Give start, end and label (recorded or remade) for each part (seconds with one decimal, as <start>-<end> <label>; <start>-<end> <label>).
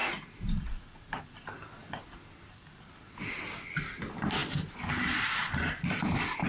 0.0-1.2 remade; 1.2-6.5 recorded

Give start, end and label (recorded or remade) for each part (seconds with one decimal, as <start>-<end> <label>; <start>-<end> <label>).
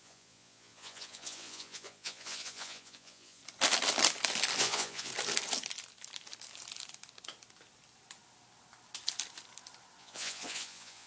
0.0-3.4 remade; 3.4-4.6 recorded; 4.6-5.1 remade; 5.1-10.0 recorded; 10.0-11.1 remade